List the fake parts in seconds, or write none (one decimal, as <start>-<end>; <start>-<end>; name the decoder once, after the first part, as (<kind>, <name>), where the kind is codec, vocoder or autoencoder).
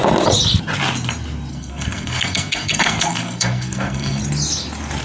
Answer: 1.5-4.2 (codec, SNAC)